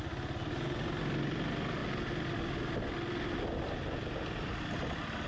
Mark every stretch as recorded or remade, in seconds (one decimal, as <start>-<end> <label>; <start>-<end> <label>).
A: 0.0-5.3 recorded